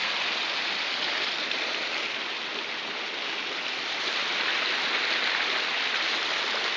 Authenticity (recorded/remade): recorded